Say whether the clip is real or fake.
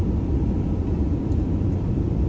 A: fake